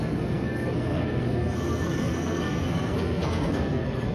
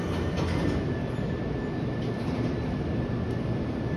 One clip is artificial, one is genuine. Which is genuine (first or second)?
second